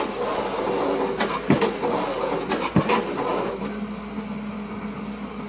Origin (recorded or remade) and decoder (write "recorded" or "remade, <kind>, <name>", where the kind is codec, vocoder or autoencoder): recorded